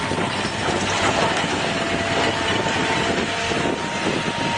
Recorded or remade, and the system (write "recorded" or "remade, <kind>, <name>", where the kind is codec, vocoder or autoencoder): recorded